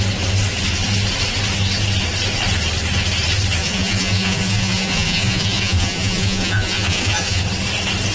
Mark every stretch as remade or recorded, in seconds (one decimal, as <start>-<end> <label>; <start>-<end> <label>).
0.0-3.6 recorded; 3.6-7.4 remade; 7.4-8.1 recorded